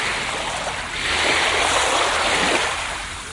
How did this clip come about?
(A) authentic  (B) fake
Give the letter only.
A